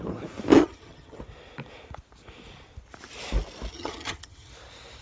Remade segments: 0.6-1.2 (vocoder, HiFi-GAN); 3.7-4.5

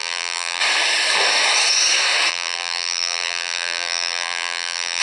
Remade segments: 0.0-0.6 (vocoder, BigVGAN v2); 2.3-5.0

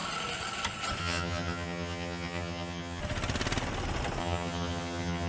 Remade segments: 1.0-3.0 (vocoder, HiFi-GAN); 4.2-5.3

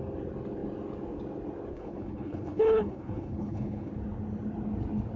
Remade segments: 1.7-3.9 (codec, HILCodec)

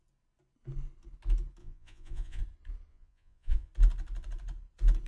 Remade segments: 1.6-2.4 (vocoder, Vocos); 2.9-3.7